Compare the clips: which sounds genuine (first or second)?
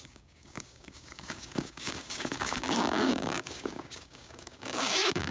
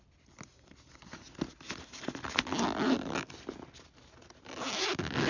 second